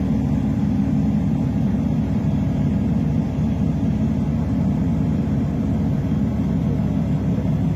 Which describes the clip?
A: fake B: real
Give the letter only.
A